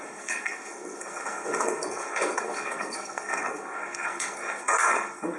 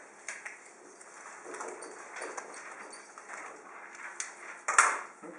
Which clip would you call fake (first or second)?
first